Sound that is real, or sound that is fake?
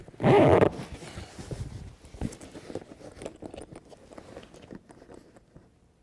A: real